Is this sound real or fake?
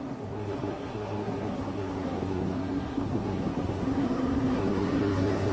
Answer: fake